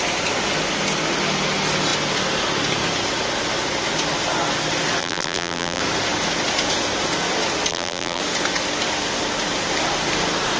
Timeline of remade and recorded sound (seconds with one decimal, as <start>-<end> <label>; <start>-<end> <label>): 0.0-5.0 recorded; 5.0-5.8 remade; 5.8-7.7 recorded; 7.7-8.2 remade; 8.2-10.6 recorded